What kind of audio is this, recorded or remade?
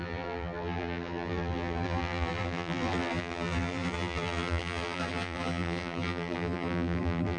remade